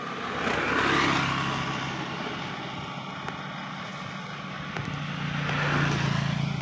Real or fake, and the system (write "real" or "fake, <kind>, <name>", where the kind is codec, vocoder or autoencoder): real